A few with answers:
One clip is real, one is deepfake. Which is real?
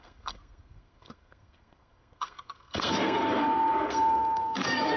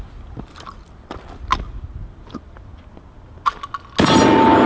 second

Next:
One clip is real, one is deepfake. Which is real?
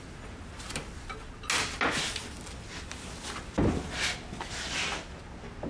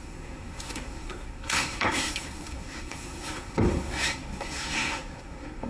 first